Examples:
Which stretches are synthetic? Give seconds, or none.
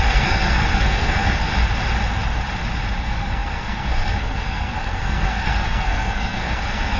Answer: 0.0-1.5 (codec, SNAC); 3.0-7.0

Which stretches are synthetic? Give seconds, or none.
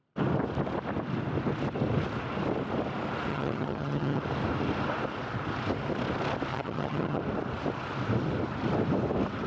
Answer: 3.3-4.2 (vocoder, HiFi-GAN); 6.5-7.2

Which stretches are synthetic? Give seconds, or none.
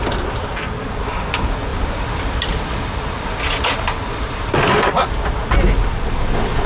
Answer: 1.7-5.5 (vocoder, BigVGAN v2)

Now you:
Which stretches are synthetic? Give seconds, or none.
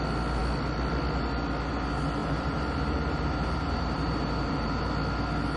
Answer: 2.2-4.8 (vocoder, BigVGAN v2)